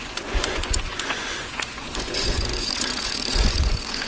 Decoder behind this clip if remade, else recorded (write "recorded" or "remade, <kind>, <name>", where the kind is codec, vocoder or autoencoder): remade, vocoder, Vocos